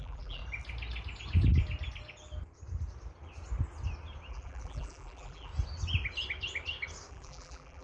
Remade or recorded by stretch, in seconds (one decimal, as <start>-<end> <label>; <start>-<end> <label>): 0.0-0.4 remade; 0.4-4.3 recorded; 4.3-5.5 remade; 5.5-7.1 recorded; 7.1-7.8 remade